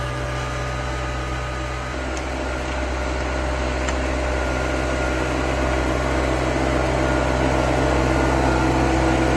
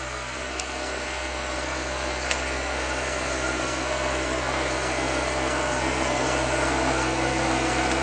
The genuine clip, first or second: first